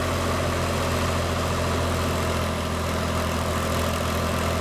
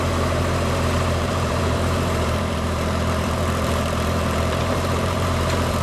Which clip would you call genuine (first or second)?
first